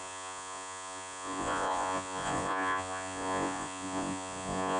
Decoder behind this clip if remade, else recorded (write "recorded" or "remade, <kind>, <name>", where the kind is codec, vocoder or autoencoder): remade, vocoder, Vocos